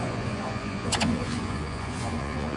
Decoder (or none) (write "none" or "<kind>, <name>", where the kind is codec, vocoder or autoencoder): vocoder, Vocos